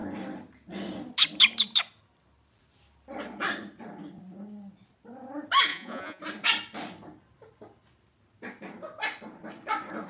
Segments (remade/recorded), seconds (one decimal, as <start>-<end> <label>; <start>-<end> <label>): 0.0-5.7 recorded; 5.7-6.2 remade; 6.2-10.1 recorded